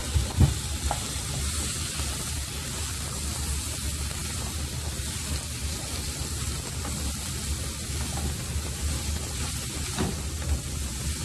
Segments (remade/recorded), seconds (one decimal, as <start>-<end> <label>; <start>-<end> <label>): 0.0-11.2 recorded

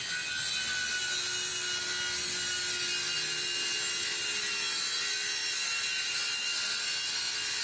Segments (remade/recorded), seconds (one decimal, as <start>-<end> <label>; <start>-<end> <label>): 0.0-7.6 recorded

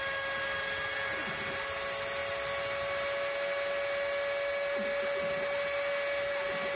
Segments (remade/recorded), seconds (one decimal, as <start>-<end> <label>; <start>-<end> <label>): 0.0-6.8 recorded